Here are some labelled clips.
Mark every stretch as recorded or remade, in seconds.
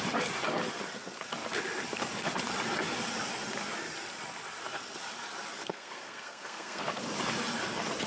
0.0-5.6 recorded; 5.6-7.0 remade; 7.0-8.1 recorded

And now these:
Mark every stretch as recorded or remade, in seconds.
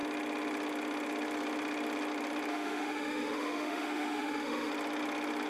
0.0-2.5 recorded; 2.5-4.7 remade; 4.7-5.5 recorded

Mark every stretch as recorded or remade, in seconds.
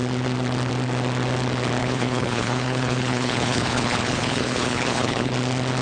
0.0-1.8 recorded; 1.8-5.3 remade; 5.3-5.8 recorded